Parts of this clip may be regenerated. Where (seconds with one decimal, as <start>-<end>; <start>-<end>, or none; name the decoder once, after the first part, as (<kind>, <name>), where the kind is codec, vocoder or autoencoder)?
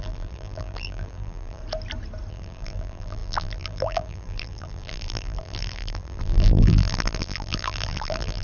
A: 0.0-1.6 (vocoder, BigVGAN v2); 2.3-8.4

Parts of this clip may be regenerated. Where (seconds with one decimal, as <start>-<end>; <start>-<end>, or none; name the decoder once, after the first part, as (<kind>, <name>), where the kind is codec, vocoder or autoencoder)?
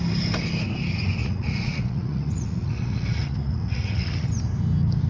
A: 1.2-4.3 (vocoder, Vocos)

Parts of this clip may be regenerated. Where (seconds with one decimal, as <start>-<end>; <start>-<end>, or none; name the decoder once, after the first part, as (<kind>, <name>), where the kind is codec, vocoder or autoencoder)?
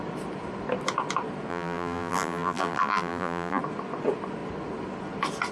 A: 1.5-3.6 (vocoder, BigVGAN v2)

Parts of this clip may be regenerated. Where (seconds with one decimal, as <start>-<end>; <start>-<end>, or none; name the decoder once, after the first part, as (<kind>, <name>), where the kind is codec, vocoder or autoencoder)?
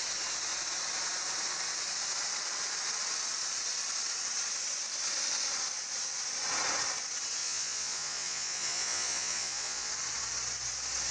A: 7.4-9.9 (vocoder, Vocos)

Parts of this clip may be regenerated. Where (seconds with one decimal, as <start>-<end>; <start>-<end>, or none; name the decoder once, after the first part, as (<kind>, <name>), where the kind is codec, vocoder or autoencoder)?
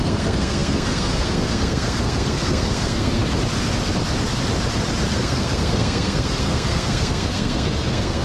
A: 0.0-3.2 (codec, SNAC); 5.1-8.2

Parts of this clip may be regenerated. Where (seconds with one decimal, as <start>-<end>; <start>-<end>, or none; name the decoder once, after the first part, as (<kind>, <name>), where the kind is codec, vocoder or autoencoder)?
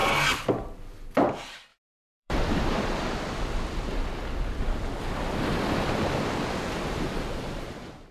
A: 1.7-2.4 (vocoder, BigVGAN v2)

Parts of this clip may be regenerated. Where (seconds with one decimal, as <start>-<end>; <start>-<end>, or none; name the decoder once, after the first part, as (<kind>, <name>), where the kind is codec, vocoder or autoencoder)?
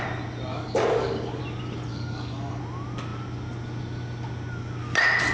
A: 0.5-1.4 (codec, DAC); 1.9-2.6